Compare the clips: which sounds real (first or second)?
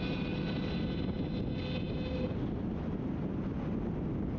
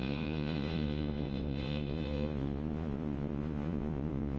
first